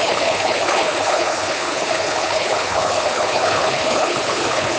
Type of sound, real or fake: fake